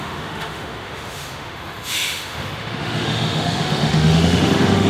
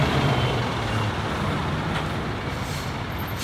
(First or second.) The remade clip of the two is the first